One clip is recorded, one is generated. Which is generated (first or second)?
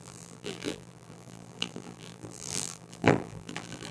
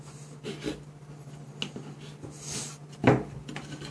first